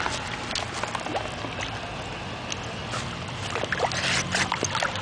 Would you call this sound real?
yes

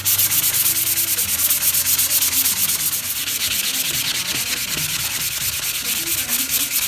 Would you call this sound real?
yes